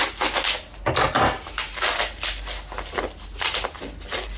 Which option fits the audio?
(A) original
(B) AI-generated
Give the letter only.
A